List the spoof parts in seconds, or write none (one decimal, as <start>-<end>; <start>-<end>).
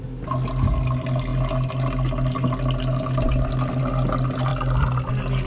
none